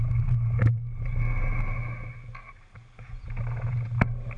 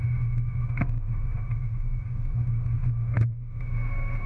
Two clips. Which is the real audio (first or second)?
first